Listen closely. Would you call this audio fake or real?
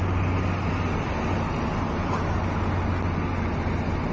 real